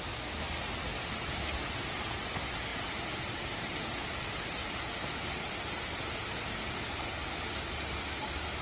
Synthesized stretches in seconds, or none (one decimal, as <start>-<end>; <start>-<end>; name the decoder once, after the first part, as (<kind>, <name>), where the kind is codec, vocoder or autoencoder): 2.7-3.4 (vocoder, BigVGAN v2); 4.6-5.3